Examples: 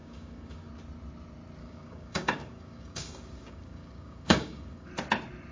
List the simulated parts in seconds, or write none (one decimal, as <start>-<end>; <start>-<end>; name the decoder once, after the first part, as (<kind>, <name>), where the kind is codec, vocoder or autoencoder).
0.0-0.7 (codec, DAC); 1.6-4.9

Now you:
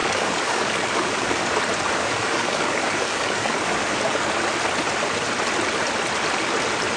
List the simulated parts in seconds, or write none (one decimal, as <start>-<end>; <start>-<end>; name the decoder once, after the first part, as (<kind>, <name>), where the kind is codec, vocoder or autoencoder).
0.0-1.6 (codec, DAC); 2.0-4.3

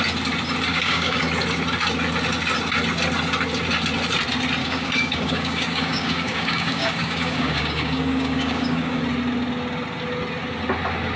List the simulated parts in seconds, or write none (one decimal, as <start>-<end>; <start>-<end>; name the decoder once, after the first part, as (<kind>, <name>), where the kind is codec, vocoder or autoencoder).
0.7-1.3 (codec, DAC); 4.6-9.0